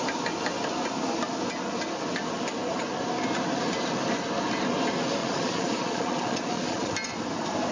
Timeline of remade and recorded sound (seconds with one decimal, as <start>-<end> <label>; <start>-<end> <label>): 0.0-5.2 recorded; 5.2-6.9 remade; 6.9-7.7 recorded